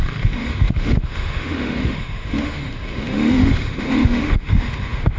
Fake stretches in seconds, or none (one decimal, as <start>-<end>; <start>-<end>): 0.0-5.2